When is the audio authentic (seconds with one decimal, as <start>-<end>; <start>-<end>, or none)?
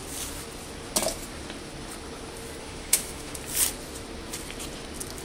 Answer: 0.0-2.6; 3.4-5.2